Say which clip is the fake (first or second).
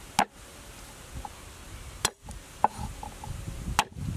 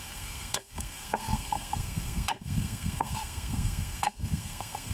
second